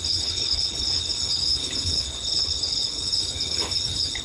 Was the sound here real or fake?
fake